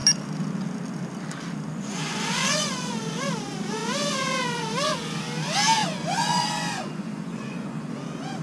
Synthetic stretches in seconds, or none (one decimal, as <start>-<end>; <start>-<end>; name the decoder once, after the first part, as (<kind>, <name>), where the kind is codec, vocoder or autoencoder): 1.7-3.0 (vocoder, Vocos); 5.8-8.0